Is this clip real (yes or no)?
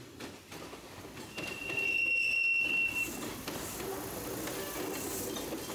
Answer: yes